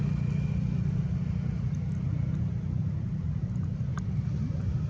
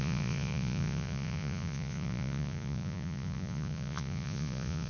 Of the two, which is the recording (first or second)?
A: first